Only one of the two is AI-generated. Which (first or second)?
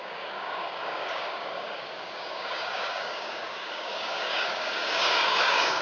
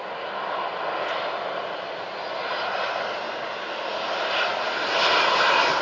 first